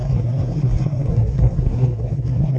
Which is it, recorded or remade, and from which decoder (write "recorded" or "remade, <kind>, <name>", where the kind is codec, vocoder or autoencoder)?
remade, codec, SNAC